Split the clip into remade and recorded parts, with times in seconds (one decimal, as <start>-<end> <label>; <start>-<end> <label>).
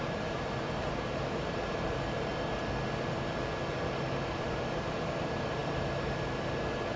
0.0-2.3 remade; 2.3-3.9 recorded; 3.9-7.0 remade